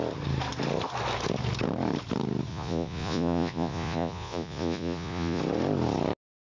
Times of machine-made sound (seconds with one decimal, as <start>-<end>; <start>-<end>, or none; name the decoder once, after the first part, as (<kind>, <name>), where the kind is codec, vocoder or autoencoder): 2.5-5.4 (vocoder, Vocos)